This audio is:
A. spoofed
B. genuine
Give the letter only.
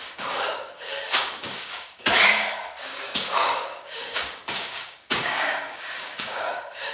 A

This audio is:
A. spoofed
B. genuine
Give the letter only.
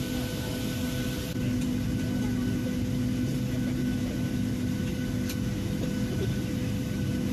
B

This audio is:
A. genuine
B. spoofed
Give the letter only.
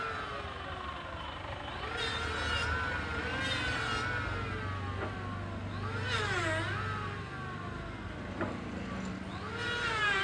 A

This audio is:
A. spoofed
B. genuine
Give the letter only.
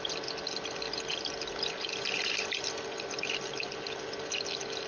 B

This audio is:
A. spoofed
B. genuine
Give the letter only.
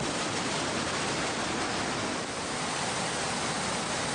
B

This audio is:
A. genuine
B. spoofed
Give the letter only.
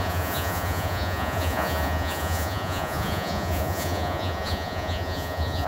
B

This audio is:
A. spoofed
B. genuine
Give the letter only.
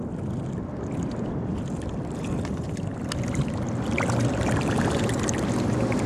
B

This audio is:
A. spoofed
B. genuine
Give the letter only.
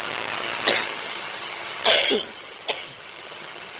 A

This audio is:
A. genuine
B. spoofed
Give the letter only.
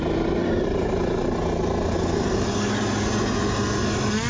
A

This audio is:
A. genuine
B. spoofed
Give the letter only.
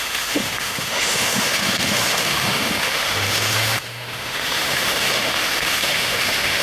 B